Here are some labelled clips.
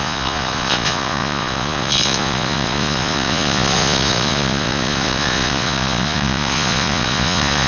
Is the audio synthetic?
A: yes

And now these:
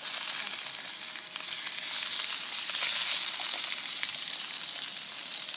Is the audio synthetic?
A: no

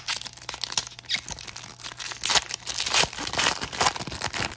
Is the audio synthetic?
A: no